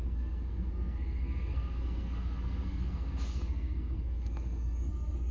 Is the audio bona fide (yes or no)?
no